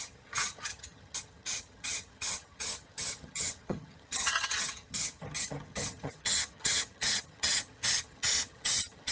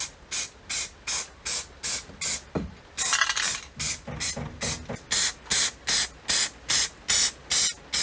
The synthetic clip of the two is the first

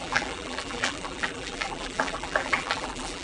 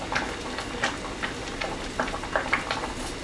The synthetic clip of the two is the first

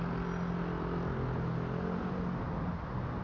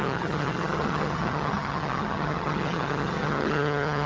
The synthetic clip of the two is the second